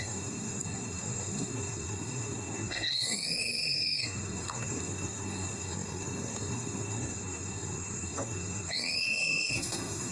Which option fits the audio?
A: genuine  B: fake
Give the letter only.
B